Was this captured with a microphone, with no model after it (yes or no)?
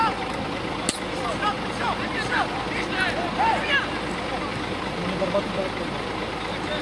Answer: yes